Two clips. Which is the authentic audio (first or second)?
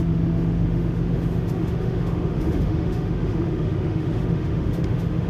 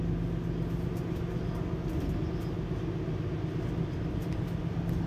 second